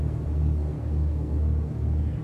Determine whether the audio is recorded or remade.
remade